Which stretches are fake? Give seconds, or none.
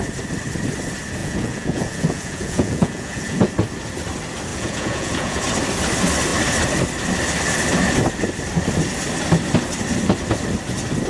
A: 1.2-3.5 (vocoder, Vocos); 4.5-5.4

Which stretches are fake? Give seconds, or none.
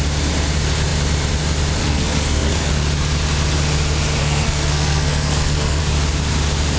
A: 1.8-2.7 (codec, SNAC); 4.2-5.8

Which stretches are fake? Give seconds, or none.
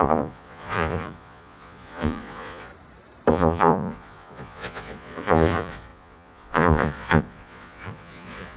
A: 0.0-2.7 (vocoder, Vocos); 3.3-8.6